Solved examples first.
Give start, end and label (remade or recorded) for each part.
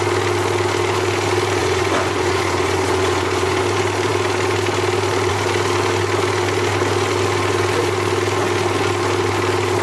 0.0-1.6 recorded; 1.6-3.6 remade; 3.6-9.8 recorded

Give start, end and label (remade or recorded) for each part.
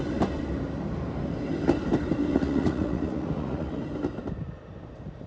0.0-2.3 recorded; 2.3-3.8 remade; 3.8-5.3 recorded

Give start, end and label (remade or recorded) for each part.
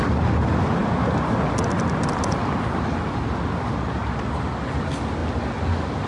0.0-6.1 recorded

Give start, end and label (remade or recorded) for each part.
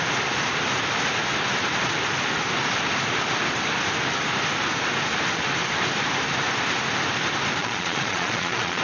0.0-7.6 recorded; 7.6-8.8 remade